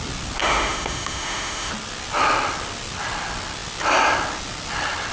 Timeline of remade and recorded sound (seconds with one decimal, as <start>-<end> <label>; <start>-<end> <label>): 0.0-0.4 recorded; 0.4-1.7 remade; 1.7-5.1 recorded